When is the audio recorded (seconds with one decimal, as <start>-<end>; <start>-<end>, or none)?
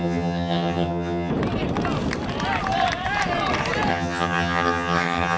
1.3-3.9